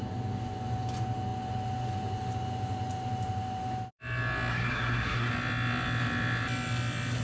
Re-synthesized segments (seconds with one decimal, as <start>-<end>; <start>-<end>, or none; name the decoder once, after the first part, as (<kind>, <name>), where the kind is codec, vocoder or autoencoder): 4.5-5.3 (codec, SNAC)

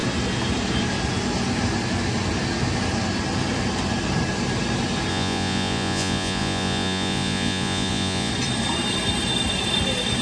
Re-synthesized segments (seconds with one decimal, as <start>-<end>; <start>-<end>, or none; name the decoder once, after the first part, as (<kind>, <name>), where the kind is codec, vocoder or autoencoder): 5.1-8.3 (vocoder, Vocos)

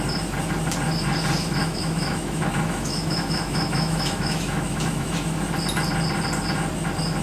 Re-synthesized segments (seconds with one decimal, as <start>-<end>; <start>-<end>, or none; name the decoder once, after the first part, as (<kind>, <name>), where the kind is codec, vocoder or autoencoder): 1.6-5.4 (autoencoder, DAC-VAE)

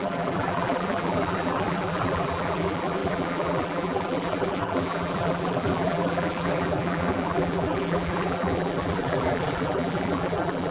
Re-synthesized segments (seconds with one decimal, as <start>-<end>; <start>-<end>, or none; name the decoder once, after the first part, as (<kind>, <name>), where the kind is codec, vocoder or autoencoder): 0.0-10.7 (vocoder, BigVGAN v2)

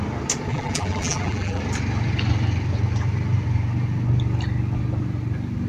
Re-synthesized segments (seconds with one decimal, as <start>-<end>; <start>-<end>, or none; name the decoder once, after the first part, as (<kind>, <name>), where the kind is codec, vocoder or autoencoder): 0.5-1.6 (vocoder, BigVGAN v2)